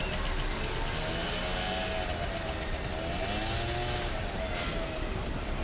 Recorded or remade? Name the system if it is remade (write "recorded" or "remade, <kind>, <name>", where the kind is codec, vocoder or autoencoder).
recorded